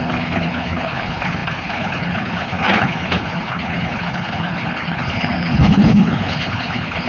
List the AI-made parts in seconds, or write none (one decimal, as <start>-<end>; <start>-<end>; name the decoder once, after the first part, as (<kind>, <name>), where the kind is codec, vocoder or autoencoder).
0.0-7.1 (codec, HILCodec)